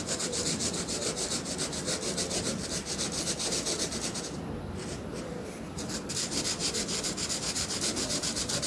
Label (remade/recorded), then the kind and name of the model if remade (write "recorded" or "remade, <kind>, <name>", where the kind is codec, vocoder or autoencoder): recorded